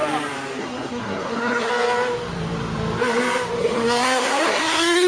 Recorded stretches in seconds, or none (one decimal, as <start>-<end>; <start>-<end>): 0.0-0.6; 1.7-3.6